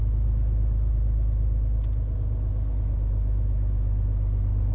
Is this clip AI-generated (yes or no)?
no